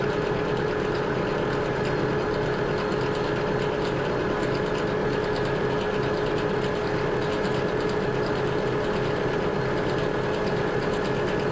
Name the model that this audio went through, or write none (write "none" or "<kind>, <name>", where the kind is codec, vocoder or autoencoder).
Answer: none